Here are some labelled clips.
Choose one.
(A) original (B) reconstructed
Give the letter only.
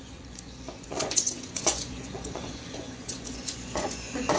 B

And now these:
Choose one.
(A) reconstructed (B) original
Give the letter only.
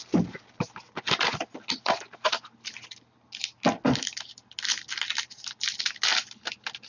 B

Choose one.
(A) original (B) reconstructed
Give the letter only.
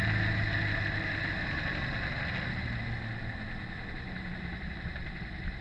A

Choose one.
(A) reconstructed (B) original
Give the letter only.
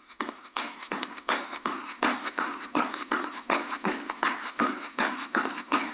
A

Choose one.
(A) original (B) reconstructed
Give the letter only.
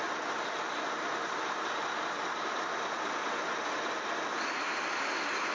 A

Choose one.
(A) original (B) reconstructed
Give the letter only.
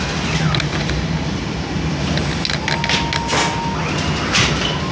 A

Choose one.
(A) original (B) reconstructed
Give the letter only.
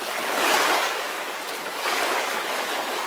B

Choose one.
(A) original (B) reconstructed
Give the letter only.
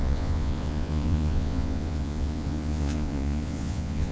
B